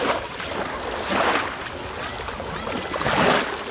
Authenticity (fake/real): real